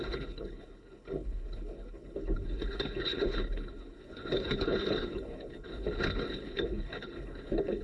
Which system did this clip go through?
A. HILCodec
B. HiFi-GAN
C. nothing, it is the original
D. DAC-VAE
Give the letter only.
A